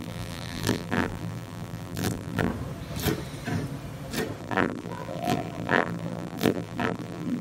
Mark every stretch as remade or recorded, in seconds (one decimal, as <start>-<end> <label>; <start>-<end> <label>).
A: 0.0-2.5 remade; 2.5-4.4 recorded; 4.4-7.4 remade